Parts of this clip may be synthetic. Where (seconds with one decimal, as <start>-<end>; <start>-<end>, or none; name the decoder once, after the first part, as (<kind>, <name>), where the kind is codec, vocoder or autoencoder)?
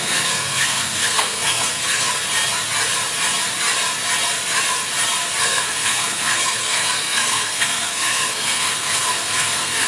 0.0-2.1 (codec, SNAC); 5.4-9.9